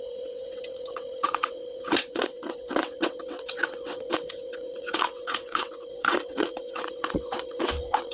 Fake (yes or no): yes